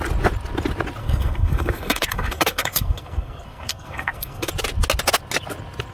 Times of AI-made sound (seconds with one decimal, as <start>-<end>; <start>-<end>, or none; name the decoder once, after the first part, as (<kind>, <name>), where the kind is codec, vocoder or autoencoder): 1.0-4.5 (codec, SNAC)

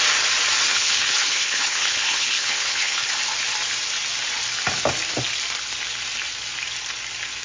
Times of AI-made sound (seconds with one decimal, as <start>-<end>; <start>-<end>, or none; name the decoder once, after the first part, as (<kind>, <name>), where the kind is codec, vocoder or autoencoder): 0.7-3.1 (codec, HILCodec)